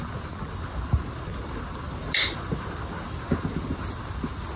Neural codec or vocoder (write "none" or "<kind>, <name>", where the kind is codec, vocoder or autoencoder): none